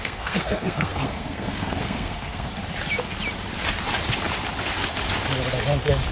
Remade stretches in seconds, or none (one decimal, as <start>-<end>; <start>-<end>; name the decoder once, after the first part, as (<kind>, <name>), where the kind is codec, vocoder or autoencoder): 0.0-2.5 (codec, SNAC)